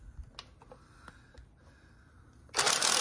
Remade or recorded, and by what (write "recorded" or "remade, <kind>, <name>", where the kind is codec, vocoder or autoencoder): recorded